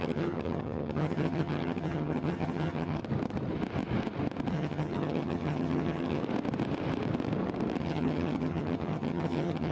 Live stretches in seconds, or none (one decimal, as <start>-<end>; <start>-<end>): 3.0-4.5; 6.2-7.8